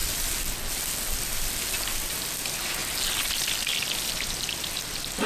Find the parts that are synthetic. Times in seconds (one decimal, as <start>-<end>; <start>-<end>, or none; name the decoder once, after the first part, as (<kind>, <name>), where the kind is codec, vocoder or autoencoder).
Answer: none